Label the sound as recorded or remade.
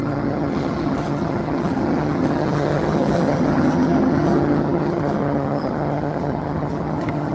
remade